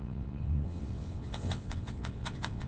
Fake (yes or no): yes